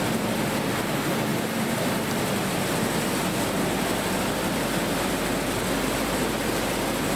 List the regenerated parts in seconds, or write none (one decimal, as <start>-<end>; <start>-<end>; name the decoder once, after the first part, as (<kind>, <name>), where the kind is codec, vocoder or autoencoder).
none

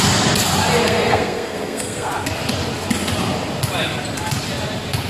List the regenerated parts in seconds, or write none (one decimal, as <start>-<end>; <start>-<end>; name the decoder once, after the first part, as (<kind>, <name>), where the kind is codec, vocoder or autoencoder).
0.8-2.1 (codec, SNAC)

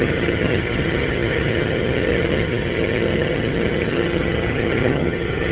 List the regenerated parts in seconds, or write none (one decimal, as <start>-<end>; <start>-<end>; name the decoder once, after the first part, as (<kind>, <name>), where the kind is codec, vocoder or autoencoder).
0.0-5.5 (vocoder, HiFi-GAN)

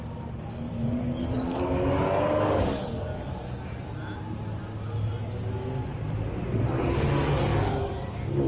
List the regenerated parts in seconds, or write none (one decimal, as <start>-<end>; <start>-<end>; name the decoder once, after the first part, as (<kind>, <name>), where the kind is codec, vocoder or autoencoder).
0.7-3.3 (codec, DAC); 7.5-8.5

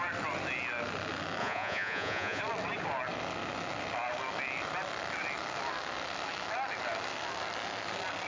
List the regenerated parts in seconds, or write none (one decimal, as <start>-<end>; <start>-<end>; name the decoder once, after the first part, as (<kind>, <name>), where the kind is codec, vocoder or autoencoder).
1.4-2.4 (vocoder, Vocos)

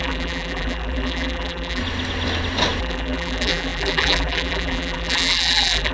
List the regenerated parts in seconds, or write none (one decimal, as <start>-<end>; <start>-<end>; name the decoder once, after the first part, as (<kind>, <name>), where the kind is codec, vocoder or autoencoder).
0.0-1.8 (vocoder, BigVGAN v2); 2.8-5.9

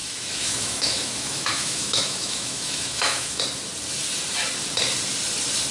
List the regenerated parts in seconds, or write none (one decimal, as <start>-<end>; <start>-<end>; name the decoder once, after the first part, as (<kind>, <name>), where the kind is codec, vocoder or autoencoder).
0.0-3.4 (autoencoder, DAC-VAE)